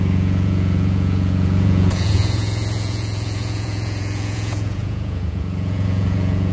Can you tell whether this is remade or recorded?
remade